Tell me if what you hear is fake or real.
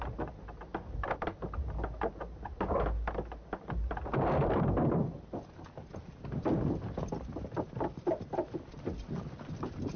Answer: real